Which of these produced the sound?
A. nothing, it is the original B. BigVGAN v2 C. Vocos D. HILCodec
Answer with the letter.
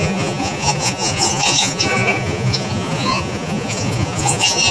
C